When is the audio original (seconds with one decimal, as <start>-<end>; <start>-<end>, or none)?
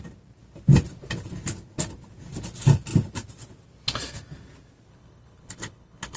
0.0-4.9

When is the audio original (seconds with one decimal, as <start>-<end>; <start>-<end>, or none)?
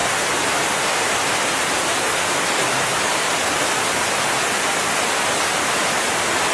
0.0-6.5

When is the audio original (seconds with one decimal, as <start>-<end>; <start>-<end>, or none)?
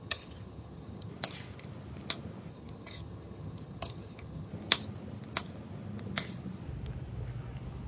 1.1-2.5; 4.5-7.9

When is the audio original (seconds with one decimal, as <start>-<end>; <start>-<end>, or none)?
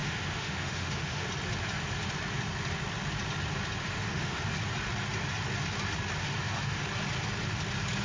1.3-3.8; 4.4-6.2; 6.8-8.0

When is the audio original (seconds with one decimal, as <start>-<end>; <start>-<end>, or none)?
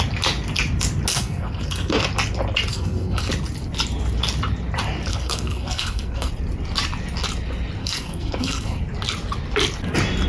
0.0-1.1; 2.0-2.7; 3.3-5.1; 6.3-7.8; 8.8-10.3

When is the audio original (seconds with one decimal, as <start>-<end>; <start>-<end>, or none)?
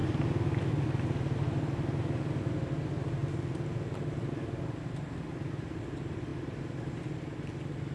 0.0-7.9